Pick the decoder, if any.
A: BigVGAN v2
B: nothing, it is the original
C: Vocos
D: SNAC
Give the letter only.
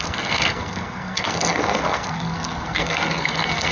D